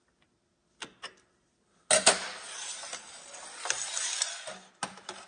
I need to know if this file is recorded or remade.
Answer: recorded